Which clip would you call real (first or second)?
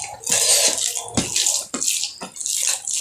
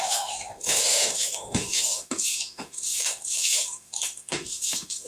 first